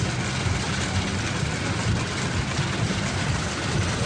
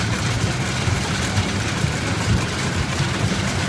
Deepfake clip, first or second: second